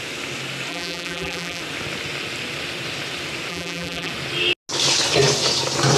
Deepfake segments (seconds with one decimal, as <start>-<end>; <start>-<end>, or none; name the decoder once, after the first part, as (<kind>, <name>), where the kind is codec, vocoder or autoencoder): 0.7-1.6 (vocoder, BigVGAN v2); 3.5-4.1